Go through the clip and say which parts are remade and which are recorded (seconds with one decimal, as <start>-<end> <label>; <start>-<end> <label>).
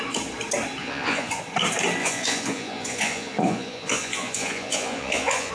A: 0.0-0.8 recorded; 0.8-1.4 remade; 1.4-2.0 recorded; 2.0-5.5 remade